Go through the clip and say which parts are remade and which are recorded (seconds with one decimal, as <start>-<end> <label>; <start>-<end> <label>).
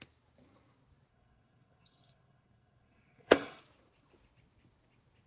0.0-1.1 recorded; 1.1-3.6 remade; 3.6-5.3 recorded